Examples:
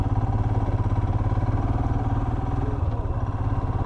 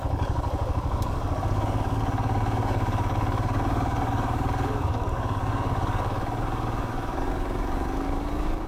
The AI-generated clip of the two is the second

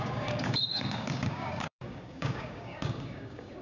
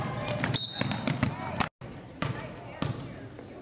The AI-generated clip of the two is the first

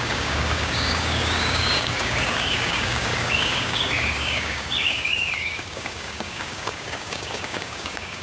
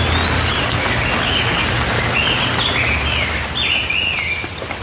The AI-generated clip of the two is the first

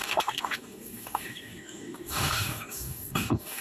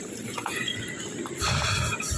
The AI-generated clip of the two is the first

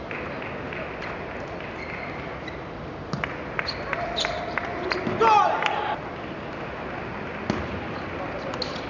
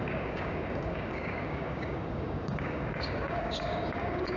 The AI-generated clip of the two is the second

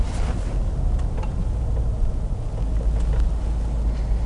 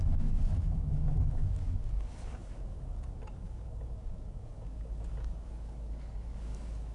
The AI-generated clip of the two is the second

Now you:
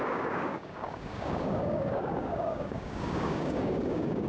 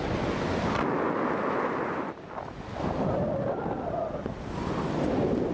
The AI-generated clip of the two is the first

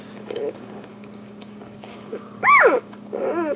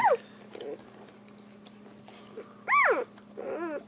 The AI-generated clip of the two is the first